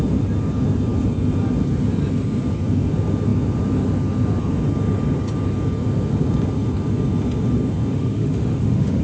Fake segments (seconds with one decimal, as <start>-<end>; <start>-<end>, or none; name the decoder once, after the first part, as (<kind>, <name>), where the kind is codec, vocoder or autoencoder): 7.9-9.0 (autoencoder, DAC-VAE)